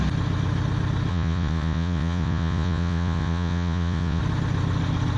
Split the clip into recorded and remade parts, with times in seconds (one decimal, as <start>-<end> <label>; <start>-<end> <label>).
0.0-1.1 recorded; 1.1-4.2 remade; 4.2-5.2 recorded